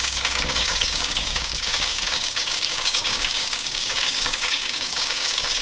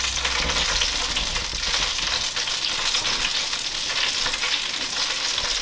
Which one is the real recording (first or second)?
second